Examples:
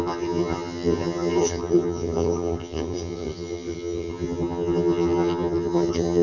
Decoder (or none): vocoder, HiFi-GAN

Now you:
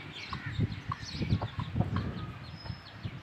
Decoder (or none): none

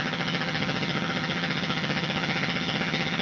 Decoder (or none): vocoder, HiFi-GAN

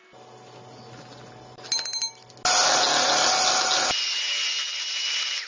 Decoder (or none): none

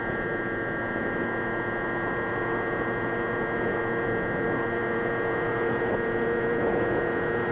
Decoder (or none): vocoder, Vocos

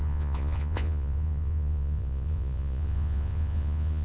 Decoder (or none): vocoder, Vocos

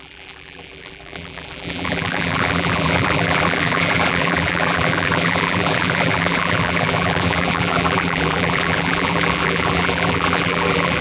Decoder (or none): vocoder, BigVGAN v2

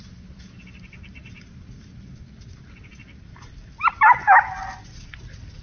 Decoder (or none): none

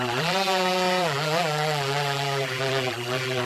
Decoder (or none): vocoder, BigVGAN v2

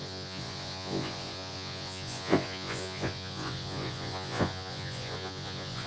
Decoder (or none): vocoder, Vocos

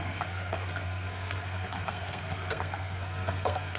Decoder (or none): codec, SNAC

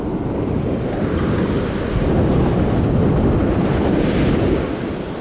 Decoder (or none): none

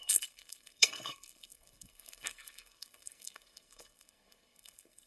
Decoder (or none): codec, SNAC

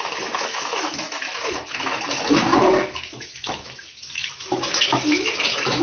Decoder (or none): autoencoder, DAC-VAE